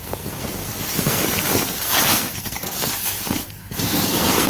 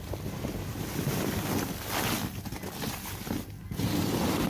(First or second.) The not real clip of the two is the first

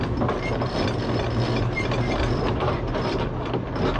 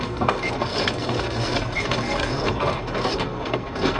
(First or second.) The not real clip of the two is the second